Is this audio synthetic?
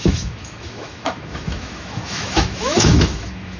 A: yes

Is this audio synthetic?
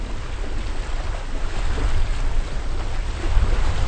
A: no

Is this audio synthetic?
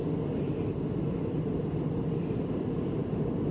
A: no